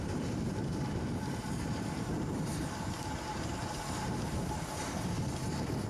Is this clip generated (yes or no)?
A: yes